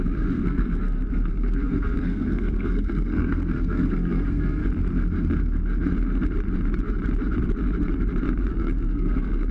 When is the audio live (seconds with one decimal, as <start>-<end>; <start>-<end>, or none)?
4.6-8.5